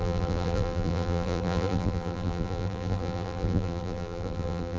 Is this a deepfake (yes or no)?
yes